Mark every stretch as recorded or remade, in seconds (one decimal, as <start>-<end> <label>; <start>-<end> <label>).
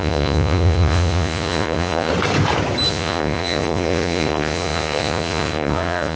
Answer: 0.0-2.1 remade; 2.1-2.9 recorded; 2.9-6.2 remade